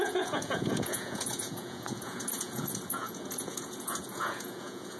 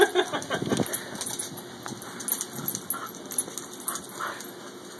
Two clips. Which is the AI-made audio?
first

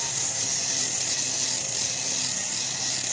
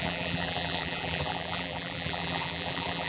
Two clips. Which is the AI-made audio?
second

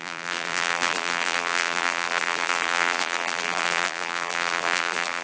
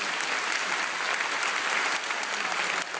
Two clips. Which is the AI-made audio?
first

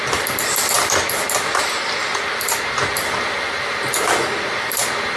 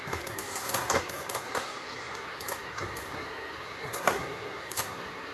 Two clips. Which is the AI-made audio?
second